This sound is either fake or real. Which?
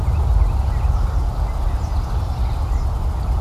real